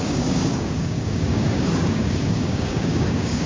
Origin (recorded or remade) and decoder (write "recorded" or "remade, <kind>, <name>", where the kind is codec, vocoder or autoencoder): remade, codec, DAC